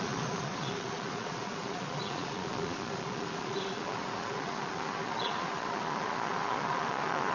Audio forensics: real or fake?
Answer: fake